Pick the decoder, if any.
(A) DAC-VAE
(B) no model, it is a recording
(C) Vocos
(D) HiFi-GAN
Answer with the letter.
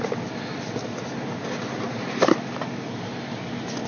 B